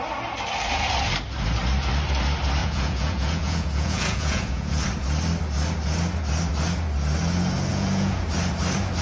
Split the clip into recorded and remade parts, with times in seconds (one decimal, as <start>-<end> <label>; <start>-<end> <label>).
0.0-2.6 recorded; 2.6-4.8 remade; 4.8-7.7 recorded; 7.7-8.2 remade; 8.2-9.0 recorded